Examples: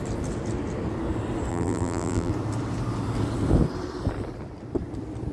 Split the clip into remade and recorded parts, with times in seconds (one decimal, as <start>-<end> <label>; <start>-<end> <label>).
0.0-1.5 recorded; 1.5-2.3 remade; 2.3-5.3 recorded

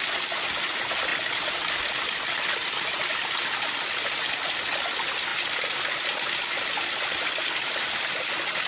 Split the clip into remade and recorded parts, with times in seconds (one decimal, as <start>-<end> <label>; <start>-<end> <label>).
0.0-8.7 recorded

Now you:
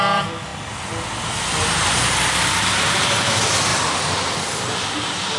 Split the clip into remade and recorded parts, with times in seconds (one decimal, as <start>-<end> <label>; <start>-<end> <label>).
0.0-0.5 remade; 0.5-2.8 recorded; 2.8-3.7 remade; 3.7-4.3 recorded; 4.3-5.4 remade

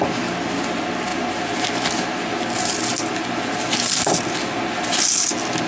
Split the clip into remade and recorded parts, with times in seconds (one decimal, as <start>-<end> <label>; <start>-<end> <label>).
0.0-5.7 recorded

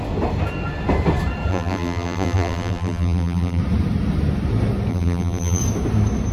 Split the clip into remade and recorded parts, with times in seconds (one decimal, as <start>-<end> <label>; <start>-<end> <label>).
0.0-1.5 recorded; 1.5-3.6 remade; 3.6-4.9 recorded; 4.9-5.6 remade; 5.6-6.3 recorded

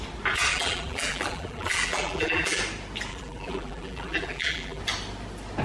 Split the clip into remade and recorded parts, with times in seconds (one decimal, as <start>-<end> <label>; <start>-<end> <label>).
0.0-0.5 recorded; 0.5-2.6 remade; 2.6-3.1 recorded; 3.1-4.8 remade; 4.8-5.6 recorded